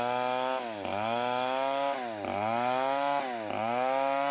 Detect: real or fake real